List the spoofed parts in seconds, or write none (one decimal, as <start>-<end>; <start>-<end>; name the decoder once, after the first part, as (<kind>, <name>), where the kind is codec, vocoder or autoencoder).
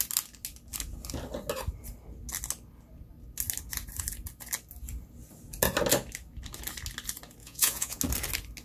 7.4-8.0 (vocoder, Vocos)